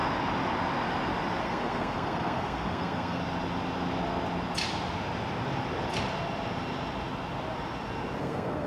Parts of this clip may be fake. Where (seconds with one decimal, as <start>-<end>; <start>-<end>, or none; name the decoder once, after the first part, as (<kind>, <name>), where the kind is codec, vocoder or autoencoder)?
1.4-3.2 (codec, SNAC); 8.2-8.7